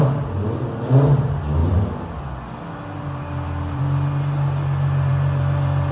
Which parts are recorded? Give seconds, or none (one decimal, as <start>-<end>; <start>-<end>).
0.0-5.9